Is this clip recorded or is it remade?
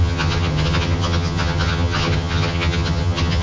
remade